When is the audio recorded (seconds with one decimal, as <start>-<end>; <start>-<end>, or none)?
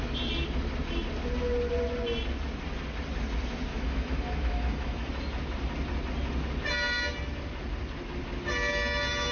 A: 0.0-3.7; 5.1-9.3